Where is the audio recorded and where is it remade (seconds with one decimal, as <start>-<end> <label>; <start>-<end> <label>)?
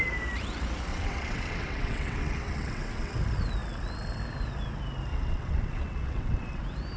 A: 0.0-0.9 recorded; 0.9-3.1 remade; 3.1-5.1 recorded; 5.1-6.6 remade; 6.6-7.0 recorded